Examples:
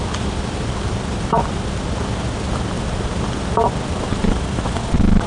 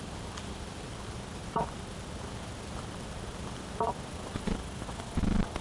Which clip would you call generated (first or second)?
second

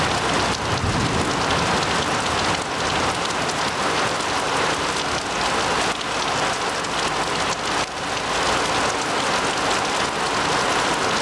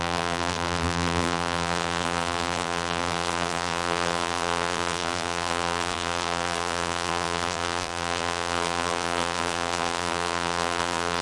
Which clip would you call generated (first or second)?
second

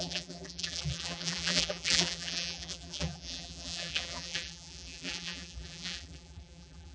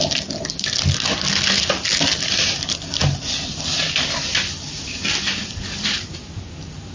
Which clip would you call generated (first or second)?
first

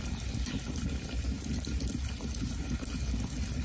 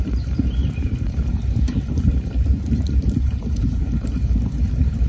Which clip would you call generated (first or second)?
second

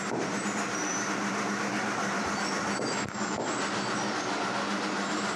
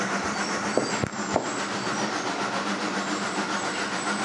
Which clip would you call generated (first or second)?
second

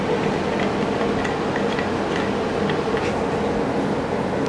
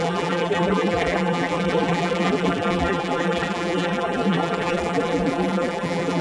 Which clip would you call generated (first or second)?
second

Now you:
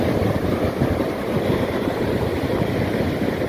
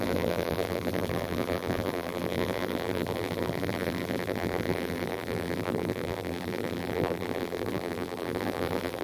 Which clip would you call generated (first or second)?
second